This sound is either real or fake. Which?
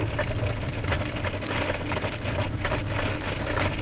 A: real